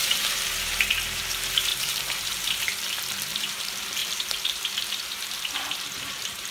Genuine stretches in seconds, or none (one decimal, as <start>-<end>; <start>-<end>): 2.7-3.3